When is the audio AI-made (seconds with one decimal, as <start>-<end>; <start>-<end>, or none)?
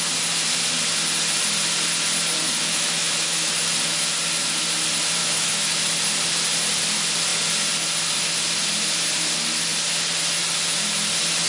2.6-3.5; 5.2-5.8